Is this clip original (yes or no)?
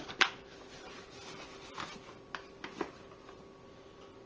yes